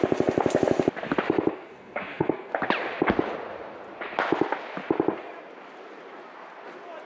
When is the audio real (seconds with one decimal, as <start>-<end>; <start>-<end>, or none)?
0.0-1.5; 2.5-7.0